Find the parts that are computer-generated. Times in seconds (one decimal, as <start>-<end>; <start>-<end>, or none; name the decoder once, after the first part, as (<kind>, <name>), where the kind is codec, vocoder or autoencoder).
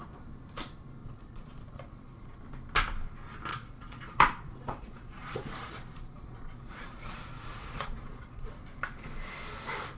1.0-2.4 (vocoder, Vocos); 3.5-8.5